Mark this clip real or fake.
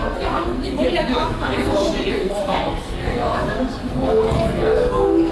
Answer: fake